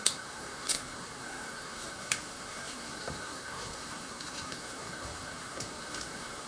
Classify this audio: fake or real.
fake